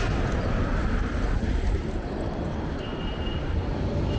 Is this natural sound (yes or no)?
yes